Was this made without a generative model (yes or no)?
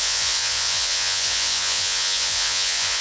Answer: no